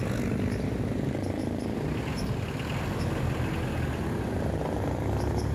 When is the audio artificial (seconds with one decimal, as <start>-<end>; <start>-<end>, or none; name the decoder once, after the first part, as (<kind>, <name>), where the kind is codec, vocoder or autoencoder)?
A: none